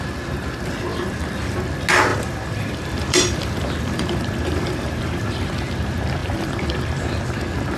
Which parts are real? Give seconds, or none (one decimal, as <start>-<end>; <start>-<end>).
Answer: 0.0-0.9; 1.6-2.1; 5.5-6.2; 6.9-7.8